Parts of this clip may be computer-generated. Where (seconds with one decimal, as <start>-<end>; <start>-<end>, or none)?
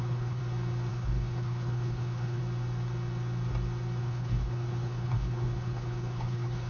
0.0-0.4; 0.9-2.4; 4.0-6.7